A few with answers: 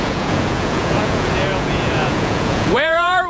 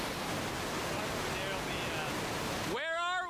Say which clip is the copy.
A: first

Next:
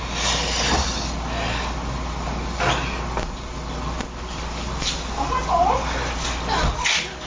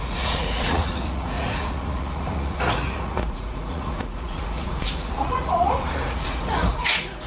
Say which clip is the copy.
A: second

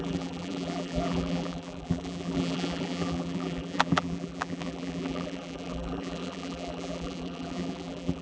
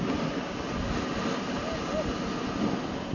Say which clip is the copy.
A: first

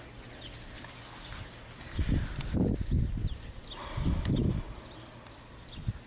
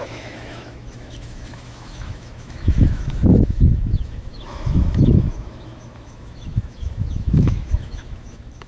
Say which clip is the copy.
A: second